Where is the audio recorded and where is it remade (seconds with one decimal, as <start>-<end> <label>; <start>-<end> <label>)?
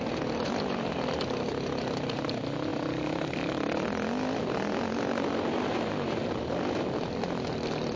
0.0-8.0 recorded